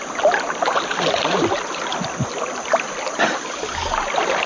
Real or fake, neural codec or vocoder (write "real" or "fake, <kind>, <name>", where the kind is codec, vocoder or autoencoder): real